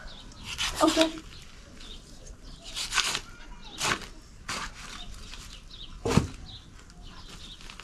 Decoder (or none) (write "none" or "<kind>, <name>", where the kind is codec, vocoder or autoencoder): none